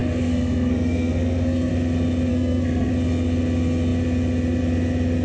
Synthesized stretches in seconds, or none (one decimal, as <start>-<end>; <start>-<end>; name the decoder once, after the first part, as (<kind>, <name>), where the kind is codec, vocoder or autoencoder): 0.0-1.7 (codec, SNAC); 2.3-2.9